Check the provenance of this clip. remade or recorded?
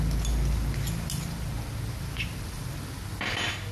recorded